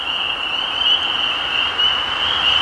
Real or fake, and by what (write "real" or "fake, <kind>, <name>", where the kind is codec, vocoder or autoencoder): real